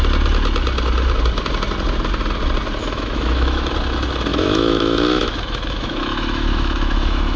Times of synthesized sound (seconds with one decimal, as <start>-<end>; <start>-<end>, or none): 2.8-3.7; 4.3-7.4

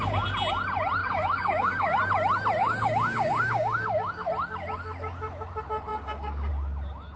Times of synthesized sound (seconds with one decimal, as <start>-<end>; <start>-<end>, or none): 1.0-2.0; 2.6-4.3; 5.9-6.5

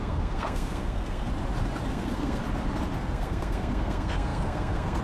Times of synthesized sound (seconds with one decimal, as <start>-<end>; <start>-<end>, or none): 0.0-1.3; 1.9-2.4; 3.0-5.0

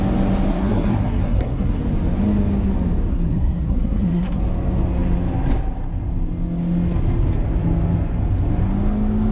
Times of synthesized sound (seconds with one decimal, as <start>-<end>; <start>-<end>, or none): 0.5-1.8; 3.1-4.4

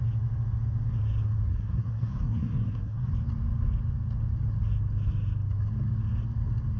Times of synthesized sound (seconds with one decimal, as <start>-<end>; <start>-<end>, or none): 1.5-3.1

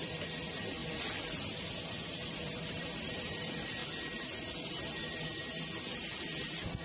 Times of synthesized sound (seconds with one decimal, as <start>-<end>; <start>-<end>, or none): 0.0-0.8; 1.9-3.8; 4.7-5.4; 6.0-6.8

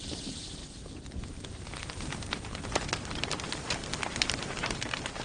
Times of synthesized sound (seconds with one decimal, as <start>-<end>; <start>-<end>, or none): 0.0-0.6; 1.5-3.8; 4.3-5.2

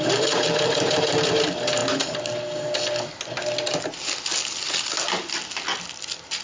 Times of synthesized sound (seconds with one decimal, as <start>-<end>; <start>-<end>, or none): 0.0-1.8; 4.7-6.4